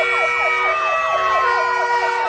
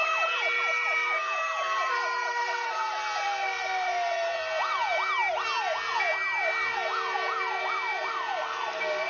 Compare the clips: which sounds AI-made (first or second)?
second